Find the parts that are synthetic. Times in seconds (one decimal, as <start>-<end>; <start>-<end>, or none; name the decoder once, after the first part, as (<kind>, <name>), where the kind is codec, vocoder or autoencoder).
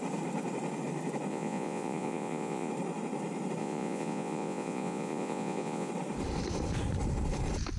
1.3-2.7 (vocoder, Vocos); 3.6-5.9